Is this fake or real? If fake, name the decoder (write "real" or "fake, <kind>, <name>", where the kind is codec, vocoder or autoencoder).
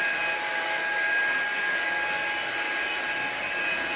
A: real